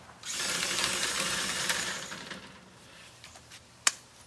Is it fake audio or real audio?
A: fake